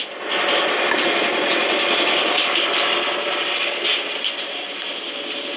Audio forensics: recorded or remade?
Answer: recorded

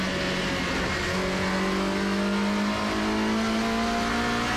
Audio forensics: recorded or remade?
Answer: recorded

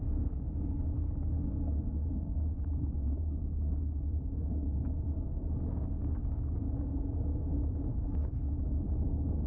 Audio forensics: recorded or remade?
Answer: remade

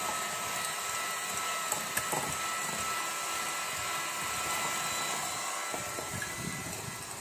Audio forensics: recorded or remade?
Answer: recorded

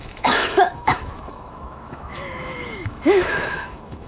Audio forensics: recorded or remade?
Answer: remade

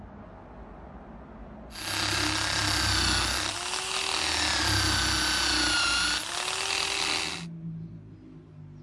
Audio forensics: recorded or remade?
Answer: recorded